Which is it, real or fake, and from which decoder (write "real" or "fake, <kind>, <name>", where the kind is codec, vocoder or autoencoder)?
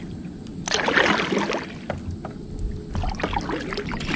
real